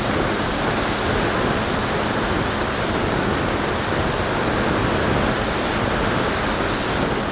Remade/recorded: recorded